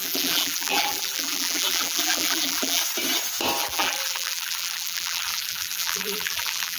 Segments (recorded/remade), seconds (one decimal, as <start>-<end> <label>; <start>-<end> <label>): 0.0-2.8 remade; 2.8-3.6 recorded; 3.6-6.8 remade